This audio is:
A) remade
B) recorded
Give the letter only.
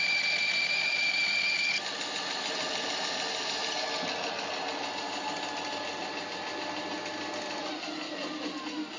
B